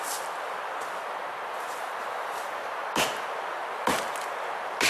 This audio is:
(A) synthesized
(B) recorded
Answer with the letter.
B